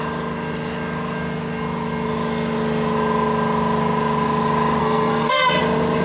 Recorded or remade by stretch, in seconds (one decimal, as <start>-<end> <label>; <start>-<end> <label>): 0.0-4.8 recorded; 4.8-5.6 remade; 5.6-6.0 recorded